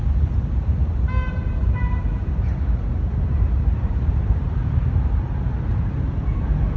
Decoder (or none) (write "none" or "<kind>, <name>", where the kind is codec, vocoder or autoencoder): vocoder, BigVGAN v2